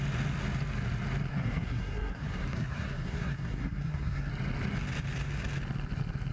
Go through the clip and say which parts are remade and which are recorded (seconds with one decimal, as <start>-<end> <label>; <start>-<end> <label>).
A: 0.0-1.3 recorded; 1.3-4.3 remade; 4.3-6.3 recorded